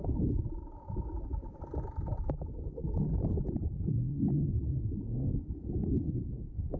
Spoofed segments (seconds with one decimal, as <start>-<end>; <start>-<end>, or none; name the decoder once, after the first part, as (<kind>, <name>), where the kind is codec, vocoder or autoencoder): none